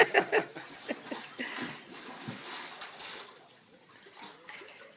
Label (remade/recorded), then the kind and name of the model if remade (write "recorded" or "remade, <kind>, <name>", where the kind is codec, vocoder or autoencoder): recorded